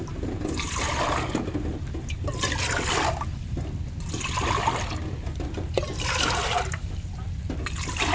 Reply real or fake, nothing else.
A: real